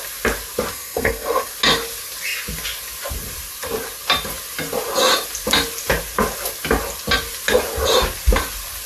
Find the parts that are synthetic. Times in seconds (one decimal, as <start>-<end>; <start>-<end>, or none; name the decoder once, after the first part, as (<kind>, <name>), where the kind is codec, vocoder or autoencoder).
0.7-1.5 (codec, SNAC)